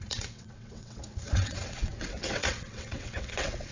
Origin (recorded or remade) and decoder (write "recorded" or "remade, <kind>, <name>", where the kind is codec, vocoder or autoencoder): remade, vocoder, WaveNeXt